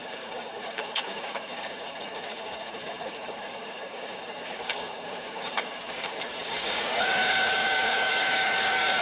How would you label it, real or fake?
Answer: fake